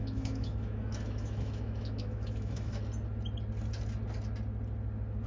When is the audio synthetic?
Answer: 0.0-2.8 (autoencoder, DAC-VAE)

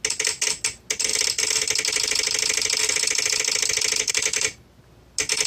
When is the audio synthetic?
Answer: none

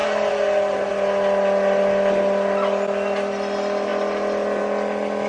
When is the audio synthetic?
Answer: none

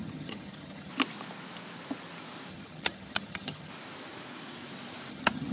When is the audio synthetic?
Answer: 0.0-0.9 (vocoder, HiFi-GAN); 2.5-3.7; 5.1-5.5

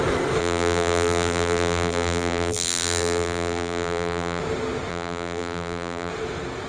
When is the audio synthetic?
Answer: 0.4-4.4 (vocoder, BigVGAN v2); 4.9-6.1

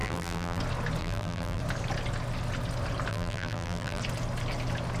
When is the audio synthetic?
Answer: 0.0-0.6 (vocoder, BigVGAN v2); 1.0-1.6; 3.1-4.0